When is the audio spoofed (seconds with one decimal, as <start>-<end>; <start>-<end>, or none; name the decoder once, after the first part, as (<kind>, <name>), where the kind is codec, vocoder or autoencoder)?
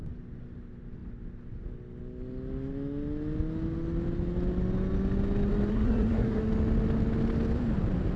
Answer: 5.7-6.4 (codec, SNAC)